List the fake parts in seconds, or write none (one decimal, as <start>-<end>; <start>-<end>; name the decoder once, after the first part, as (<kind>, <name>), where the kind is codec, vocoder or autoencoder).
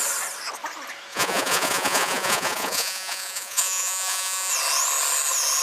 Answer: 1.1-4.5 (vocoder, Vocos)